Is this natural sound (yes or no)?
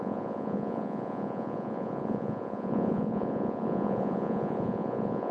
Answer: no